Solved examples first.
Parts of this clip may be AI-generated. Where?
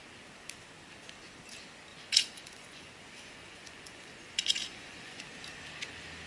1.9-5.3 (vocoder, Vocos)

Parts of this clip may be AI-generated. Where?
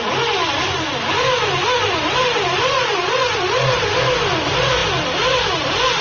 0.4-3.9 (vocoder, BigVGAN v2)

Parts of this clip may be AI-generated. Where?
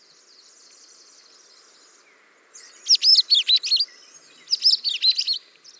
none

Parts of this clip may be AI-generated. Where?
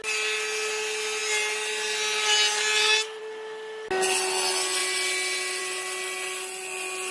none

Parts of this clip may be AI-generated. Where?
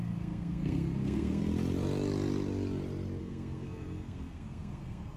0.0-1.4 (codec, SNAC); 3.2-5.2